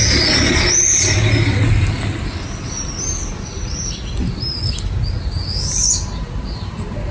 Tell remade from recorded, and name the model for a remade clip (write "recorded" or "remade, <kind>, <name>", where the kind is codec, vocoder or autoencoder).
recorded